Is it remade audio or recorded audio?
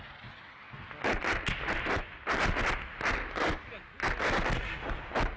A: recorded